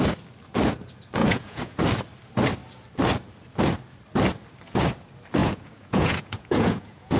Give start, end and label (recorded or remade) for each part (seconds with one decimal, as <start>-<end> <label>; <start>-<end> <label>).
0.0-1.2 recorded; 1.2-1.8 remade; 1.8-5.4 recorded; 5.4-7.2 remade